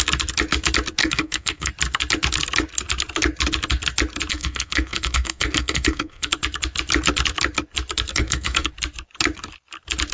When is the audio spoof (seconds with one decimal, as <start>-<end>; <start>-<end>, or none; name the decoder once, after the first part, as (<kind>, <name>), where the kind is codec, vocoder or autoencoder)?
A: 1.0-1.7 (codec, SNAC); 4.3-6.3; 8.1-8.7